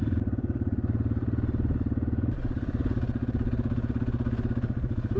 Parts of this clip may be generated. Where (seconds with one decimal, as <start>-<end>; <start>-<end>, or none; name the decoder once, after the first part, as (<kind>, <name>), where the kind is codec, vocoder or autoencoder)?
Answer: 0.0-3.2 (vocoder, BigVGAN v2)